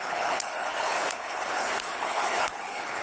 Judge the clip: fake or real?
fake